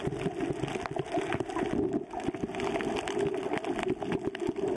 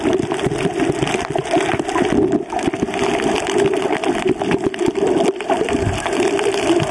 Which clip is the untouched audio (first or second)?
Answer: first